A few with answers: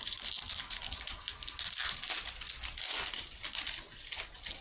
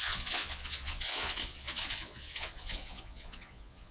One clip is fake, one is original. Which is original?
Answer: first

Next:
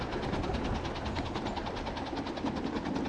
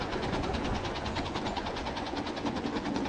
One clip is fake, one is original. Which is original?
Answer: first